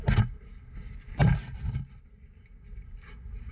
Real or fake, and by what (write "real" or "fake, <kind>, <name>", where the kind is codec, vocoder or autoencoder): real